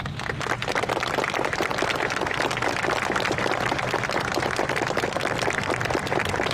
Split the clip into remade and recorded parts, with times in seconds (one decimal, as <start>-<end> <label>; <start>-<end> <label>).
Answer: 0.0-6.5 recorded